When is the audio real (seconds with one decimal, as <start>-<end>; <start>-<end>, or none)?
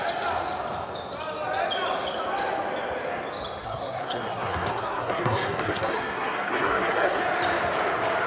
0.0-3.6; 7.2-8.3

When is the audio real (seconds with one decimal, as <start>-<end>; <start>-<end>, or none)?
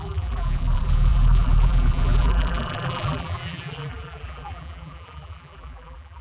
none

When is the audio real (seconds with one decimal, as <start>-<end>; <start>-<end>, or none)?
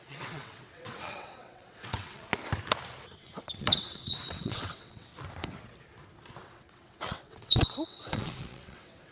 2.3-3.1; 5.1-6.4